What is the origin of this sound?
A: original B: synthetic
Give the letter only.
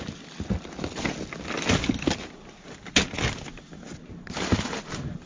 A